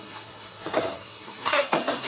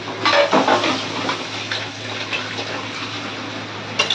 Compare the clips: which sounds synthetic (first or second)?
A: first